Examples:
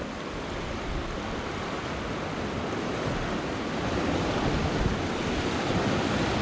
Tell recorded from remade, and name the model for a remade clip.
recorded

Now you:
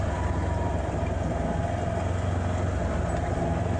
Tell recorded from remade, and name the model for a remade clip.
recorded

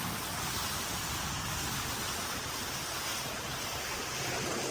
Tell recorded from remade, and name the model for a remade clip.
recorded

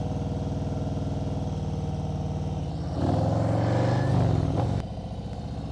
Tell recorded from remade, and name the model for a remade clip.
recorded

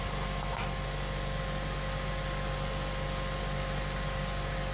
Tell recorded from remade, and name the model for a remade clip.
recorded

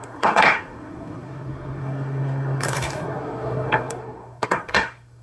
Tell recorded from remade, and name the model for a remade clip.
remade, codec, SNAC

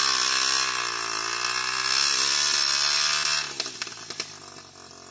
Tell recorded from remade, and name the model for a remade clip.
recorded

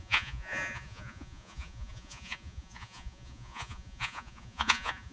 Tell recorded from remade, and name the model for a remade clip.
remade, vocoder, Vocos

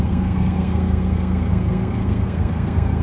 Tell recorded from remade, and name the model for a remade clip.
remade, codec, SNAC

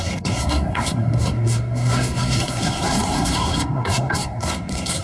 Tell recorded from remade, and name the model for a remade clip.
remade, codec, SNAC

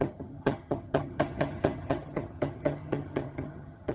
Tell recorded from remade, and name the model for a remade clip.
remade, vocoder, HiFi-GAN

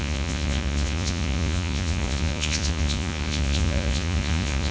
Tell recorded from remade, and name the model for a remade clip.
remade, vocoder, Vocos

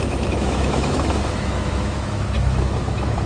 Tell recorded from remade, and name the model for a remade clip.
remade, autoencoder, DAC-VAE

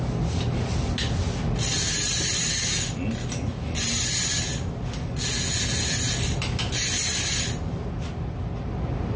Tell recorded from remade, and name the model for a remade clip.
recorded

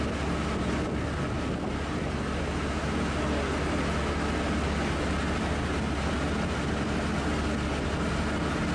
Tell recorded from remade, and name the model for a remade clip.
recorded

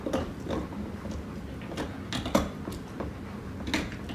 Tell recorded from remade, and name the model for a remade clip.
recorded